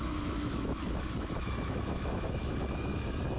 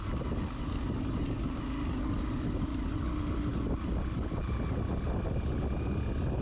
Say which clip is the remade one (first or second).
first